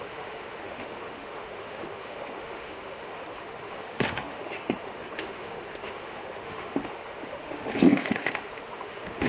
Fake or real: fake